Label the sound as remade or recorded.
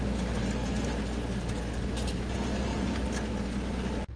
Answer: recorded